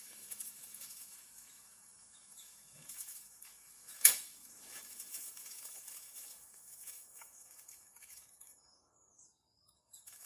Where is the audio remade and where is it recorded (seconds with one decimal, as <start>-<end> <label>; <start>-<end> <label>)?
0.0-10.3 remade